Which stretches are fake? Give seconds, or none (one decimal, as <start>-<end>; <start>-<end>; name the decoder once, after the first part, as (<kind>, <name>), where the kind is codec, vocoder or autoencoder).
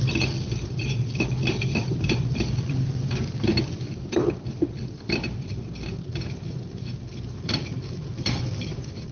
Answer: 0.0-0.8 (vocoder, BigVGAN v2); 1.4-9.1